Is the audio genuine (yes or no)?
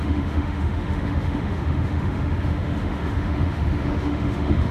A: no